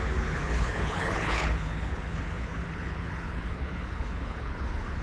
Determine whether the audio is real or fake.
fake